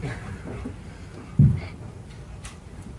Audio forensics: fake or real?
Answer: real